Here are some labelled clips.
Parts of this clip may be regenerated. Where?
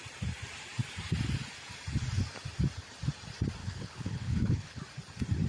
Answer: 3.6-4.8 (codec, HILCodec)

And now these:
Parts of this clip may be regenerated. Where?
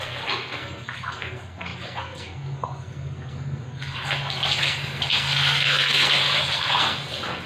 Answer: 0.0-7.5 (codec, SNAC)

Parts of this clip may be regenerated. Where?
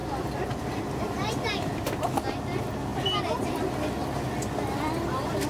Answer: none